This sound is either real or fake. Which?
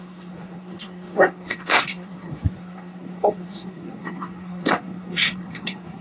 fake